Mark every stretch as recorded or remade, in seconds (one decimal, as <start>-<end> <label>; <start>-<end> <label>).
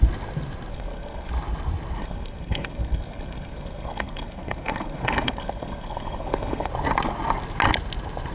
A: 0.0-0.7 recorded; 0.7-1.3 remade; 1.3-2.0 recorded; 2.0-6.7 remade; 6.7-8.3 recorded